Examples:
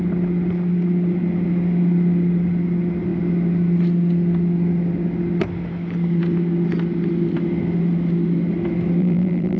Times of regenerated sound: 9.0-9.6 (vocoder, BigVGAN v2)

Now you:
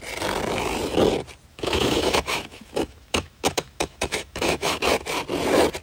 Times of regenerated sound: 1.5-4.8 (autoencoder, DAC-VAE)

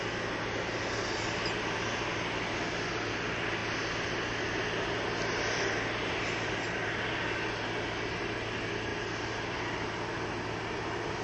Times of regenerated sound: none